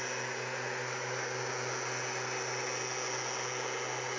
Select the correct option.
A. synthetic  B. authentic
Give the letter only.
B